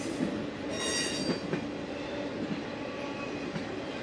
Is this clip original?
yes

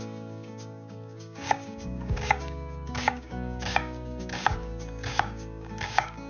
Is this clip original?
no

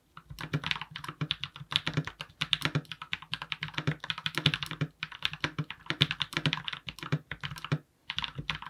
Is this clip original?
yes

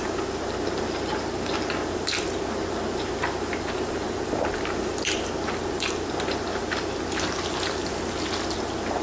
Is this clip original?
yes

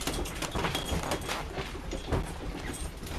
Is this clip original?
yes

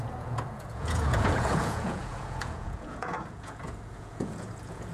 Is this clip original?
no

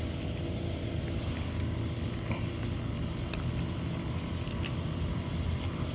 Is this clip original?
yes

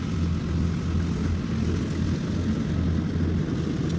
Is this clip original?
yes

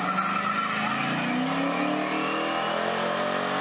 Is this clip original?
yes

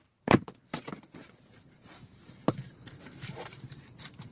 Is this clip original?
no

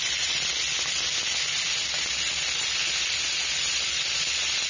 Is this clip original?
yes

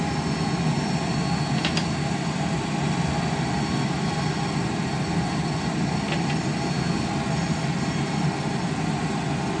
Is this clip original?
yes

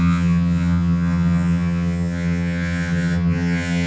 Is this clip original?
no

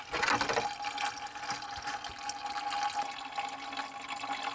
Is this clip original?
yes